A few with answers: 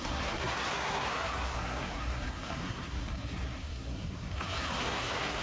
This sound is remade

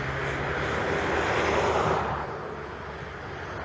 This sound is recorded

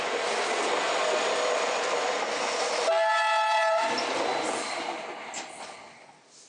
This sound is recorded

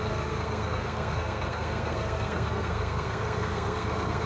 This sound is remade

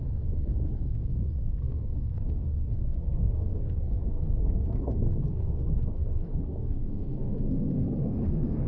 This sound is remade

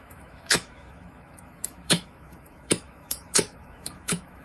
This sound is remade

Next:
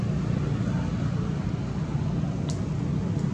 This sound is recorded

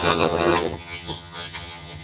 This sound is remade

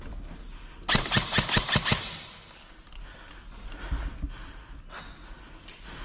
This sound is recorded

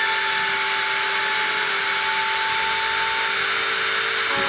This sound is recorded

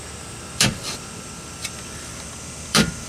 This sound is remade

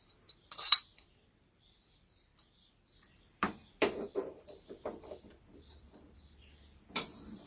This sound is remade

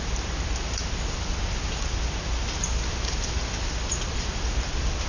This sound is recorded